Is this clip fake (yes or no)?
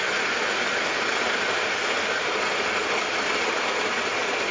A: no